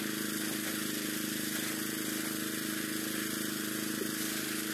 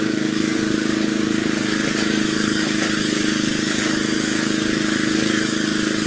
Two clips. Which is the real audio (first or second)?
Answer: first